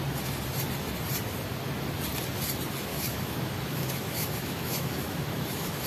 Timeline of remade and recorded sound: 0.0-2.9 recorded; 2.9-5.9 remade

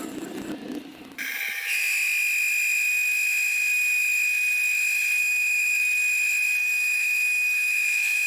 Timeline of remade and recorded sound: 0.0-5.2 recorded; 5.2-5.8 remade; 5.8-6.6 recorded; 6.6-8.3 remade

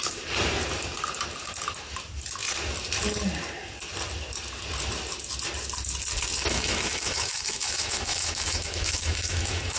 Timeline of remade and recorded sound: 0.0-6.4 recorded; 6.4-9.8 remade

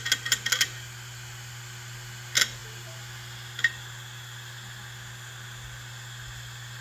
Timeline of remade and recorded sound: 0.0-6.8 recorded

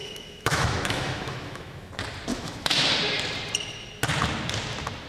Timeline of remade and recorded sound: 0.0-1.9 remade; 1.9-2.3 recorded; 2.3-2.9 remade; 2.9-5.1 recorded

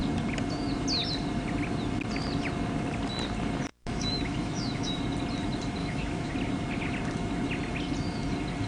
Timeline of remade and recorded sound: 0.0-3.7 recorded; 3.7-5.0 remade; 5.0-5.8 recorded; 5.8-6.3 remade; 6.3-8.7 recorded